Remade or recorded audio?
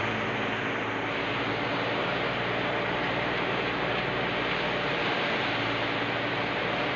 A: recorded